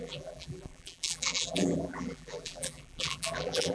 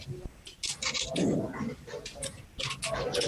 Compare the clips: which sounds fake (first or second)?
first